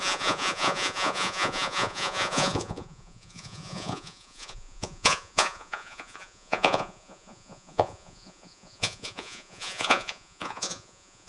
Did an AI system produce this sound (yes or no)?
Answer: yes